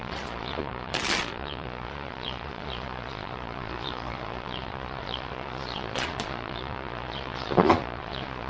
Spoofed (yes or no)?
yes